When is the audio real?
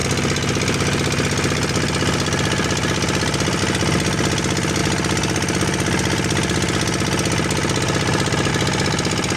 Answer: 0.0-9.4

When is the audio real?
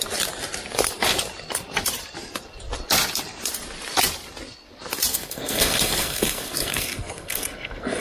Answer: 0.0-5.1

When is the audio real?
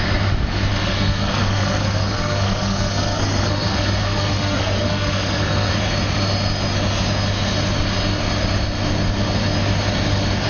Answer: 0.0-0.7; 5.7-10.5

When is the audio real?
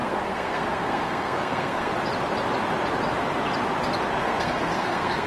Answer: 1.9-4.2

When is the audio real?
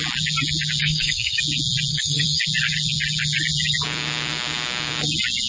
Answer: 0.0-0.8; 1.4-1.9; 2.4-5.5